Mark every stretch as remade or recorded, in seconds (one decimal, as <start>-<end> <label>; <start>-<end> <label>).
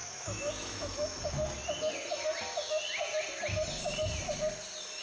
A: 0.0-1.2 remade; 1.2-5.0 recorded